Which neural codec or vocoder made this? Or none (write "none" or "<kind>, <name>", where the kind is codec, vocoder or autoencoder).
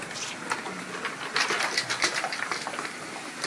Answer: none